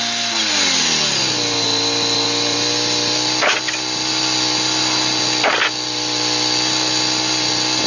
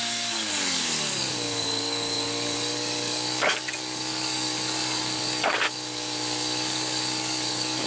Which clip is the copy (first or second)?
second